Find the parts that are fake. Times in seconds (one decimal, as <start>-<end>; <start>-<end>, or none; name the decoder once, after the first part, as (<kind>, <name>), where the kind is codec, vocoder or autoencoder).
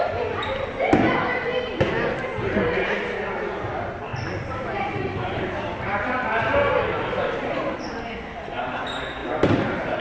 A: 4.1-7.9 (vocoder, BigVGAN v2); 9.2-10.0